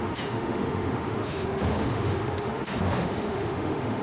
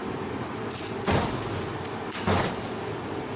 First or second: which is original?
second